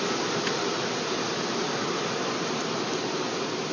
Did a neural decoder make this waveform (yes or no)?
no